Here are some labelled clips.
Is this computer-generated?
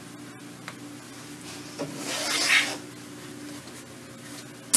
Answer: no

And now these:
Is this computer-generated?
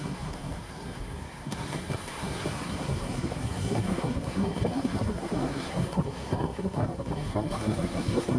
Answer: yes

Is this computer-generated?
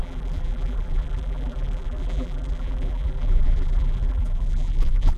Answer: yes